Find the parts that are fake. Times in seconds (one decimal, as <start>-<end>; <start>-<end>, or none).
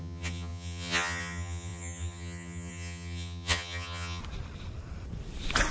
0.0-4.2